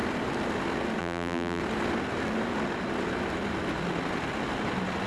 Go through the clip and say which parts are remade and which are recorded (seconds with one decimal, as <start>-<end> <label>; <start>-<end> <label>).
0.0-1.0 recorded; 1.0-1.6 remade; 1.6-5.1 recorded